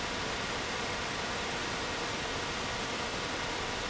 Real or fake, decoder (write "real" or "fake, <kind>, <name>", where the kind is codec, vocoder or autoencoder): fake, vocoder, BigVGAN v2